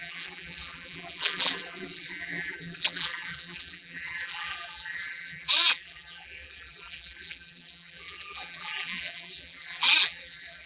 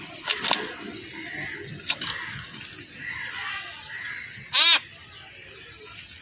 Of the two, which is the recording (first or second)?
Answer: second